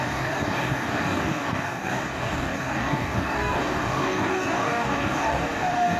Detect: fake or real fake